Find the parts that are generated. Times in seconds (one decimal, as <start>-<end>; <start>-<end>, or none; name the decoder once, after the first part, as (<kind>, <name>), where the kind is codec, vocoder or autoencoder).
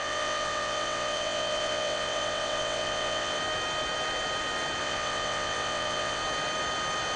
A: 0.0-3.4 (vocoder, WaveNeXt); 4.8-6.2